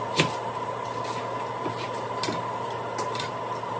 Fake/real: real